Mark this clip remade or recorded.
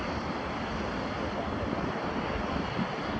recorded